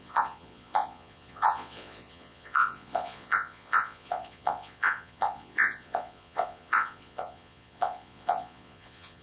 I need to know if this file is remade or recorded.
remade